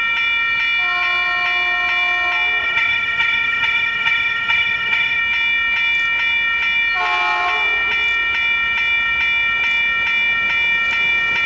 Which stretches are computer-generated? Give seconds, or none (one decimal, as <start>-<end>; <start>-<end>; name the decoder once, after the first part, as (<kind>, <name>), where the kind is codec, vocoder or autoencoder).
2.6-5.2 (vocoder, HiFi-GAN)